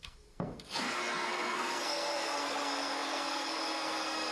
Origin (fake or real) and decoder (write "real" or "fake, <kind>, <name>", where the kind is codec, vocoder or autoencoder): fake, codec, SNAC